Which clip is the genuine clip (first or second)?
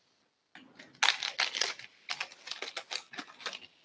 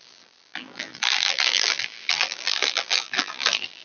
first